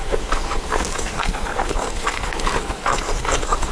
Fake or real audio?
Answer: fake